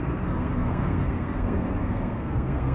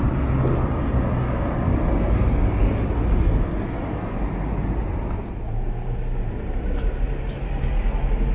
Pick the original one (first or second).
second